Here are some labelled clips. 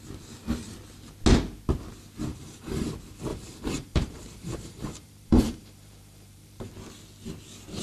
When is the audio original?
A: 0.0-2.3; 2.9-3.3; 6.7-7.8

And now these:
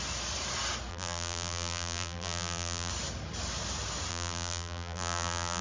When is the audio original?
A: 0.0-0.9; 2.9-4.1

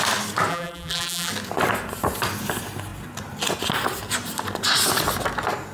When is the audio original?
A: 0.0-0.5; 1.3-5.7

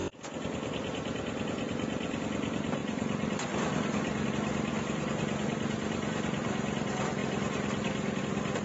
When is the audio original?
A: 7.2-8.2

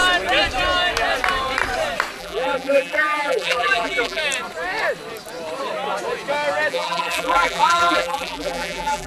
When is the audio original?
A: 0.0-2.2; 4.2-6.7